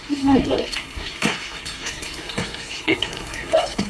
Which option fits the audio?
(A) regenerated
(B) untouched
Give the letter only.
A